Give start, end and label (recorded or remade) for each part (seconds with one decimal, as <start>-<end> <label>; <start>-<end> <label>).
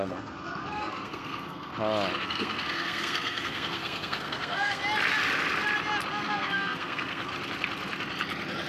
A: 0.0-1.7 remade; 1.7-2.2 recorded; 2.2-4.8 remade; 4.8-6.1 recorded; 6.1-7.3 remade; 7.3-8.7 recorded